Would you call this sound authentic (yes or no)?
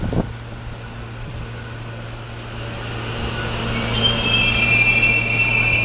yes